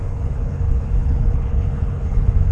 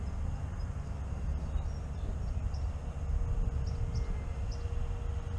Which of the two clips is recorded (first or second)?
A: second